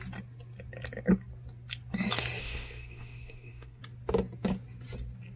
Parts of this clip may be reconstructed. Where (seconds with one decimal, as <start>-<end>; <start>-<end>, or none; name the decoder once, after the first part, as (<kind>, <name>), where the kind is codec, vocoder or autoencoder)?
2.4-3.8 (codec, SNAC)